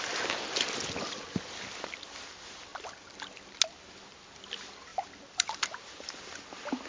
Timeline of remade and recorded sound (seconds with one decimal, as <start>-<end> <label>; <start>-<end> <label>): 0.0-2.7 recorded; 2.7-3.6 remade; 3.6-4.9 recorded; 4.9-5.7 remade; 5.7-6.9 recorded